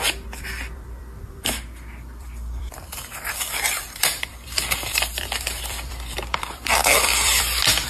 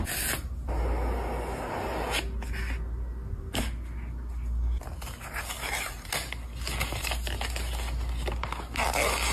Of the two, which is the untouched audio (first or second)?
second